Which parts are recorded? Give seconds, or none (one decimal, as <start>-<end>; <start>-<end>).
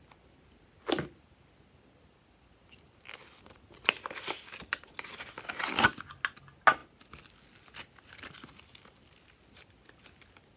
0.0-10.6